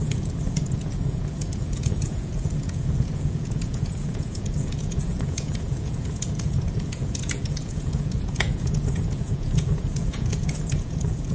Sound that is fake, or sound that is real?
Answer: fake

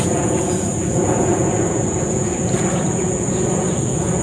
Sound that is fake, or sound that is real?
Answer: fake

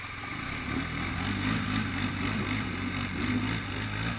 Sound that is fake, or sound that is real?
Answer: real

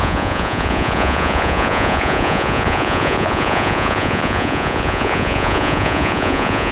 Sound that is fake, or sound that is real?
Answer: fake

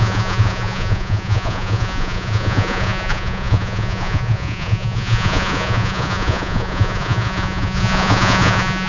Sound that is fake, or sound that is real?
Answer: fake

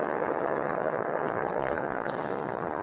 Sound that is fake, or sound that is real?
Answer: fake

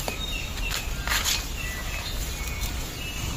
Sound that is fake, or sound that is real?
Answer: real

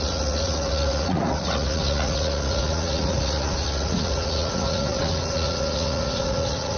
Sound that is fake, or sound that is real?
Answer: fake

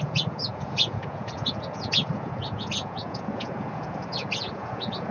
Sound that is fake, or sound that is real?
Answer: fake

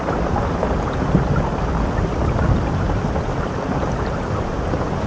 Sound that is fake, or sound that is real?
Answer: real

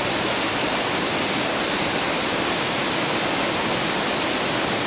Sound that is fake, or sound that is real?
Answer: real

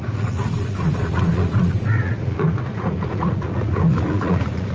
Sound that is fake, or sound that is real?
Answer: fake